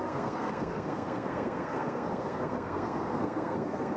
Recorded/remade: remade